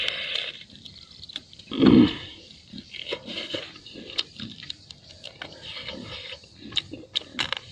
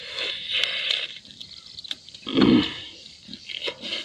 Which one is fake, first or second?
first